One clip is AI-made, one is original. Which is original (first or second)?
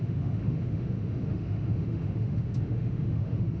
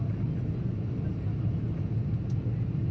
second